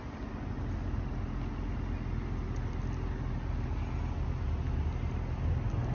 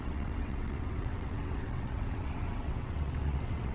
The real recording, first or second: first